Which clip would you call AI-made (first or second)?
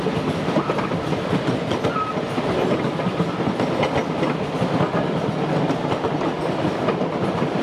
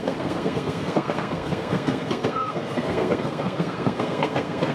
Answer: second